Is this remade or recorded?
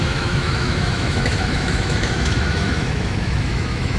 remade